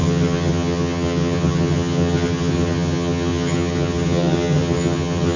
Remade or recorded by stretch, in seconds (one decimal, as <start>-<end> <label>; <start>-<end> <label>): 0.0-5.4 remade